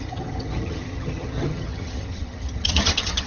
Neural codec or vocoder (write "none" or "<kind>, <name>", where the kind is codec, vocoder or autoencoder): vocoder, HiFi-GAN